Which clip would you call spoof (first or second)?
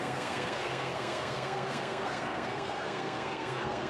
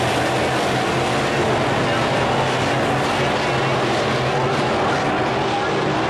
first